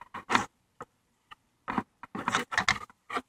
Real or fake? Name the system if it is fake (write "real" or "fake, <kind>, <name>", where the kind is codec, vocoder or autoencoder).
real